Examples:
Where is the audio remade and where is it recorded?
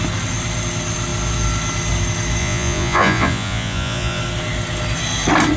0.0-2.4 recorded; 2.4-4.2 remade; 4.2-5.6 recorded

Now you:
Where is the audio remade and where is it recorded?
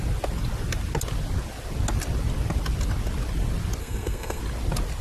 0.0-3.8 recorded; 3.8-4.4 remade; 4.4-5.0 recorded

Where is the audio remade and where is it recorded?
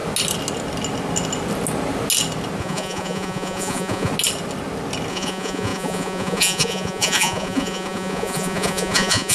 0.0-2.6 recorded; 2.6-4.1 remade; 4.1-5.1 recorded; 5.1-9.3 remade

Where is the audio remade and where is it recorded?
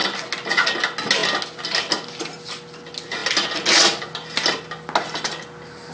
0.0-5.9 recorded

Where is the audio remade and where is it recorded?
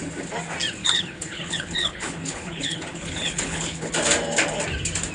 0.0-0.8 recorded; 0.8-3.9 remade; 3.9-5.1 recorded